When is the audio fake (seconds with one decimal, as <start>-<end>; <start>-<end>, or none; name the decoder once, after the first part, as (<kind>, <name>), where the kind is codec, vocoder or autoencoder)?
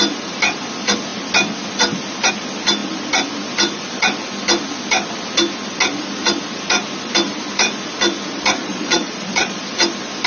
8.6-9.6 (vocoder, Vocos)